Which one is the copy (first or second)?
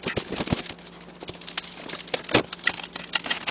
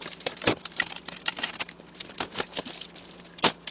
second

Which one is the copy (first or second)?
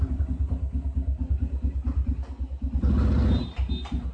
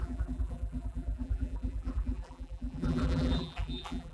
second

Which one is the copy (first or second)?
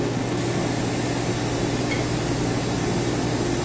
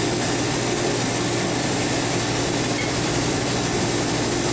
second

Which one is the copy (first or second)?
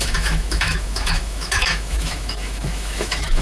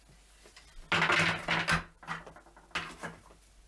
first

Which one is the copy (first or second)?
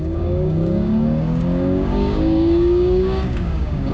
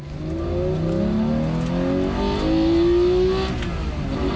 first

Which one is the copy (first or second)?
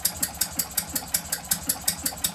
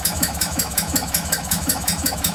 second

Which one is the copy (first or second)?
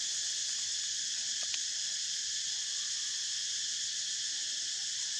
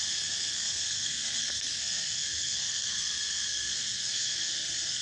second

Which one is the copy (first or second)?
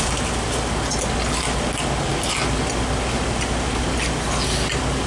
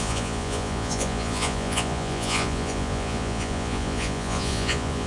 second